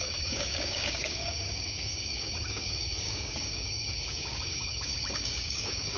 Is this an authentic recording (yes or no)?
no